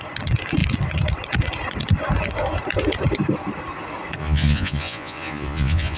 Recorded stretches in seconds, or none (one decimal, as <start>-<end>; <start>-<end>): 0.0-4.2